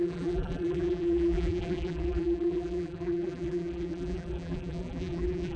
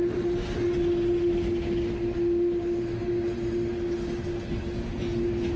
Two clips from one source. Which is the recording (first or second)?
second